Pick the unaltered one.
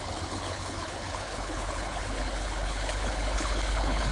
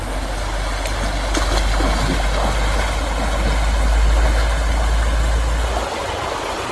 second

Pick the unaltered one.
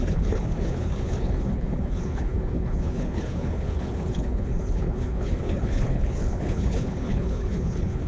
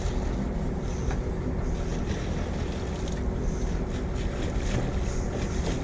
second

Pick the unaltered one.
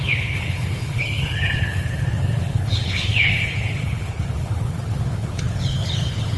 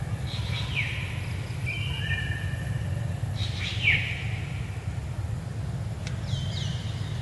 second